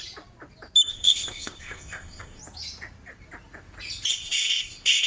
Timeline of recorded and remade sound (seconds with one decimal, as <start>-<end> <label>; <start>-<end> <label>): 0.0-0.9 recorded; 0.9-2.4 remade; 2.4-4.1 recorded; 4.1-5.1 remade